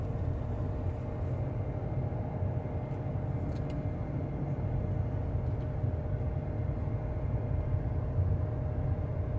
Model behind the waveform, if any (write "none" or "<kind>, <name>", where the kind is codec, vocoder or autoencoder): none